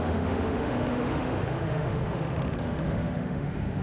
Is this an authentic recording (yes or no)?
no